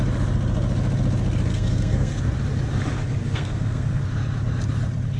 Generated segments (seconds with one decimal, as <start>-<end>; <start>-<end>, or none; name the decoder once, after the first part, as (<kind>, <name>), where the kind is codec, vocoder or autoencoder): 1.5-2.2 (codec, SNAC); 3.2-4.0